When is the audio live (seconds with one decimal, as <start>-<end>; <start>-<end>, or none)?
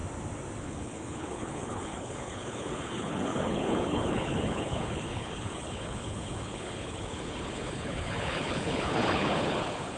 0.0-0.6